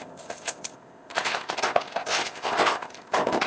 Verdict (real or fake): fake